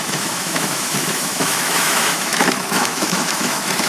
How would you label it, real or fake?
fake